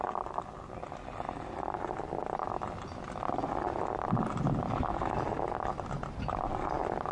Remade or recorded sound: recorded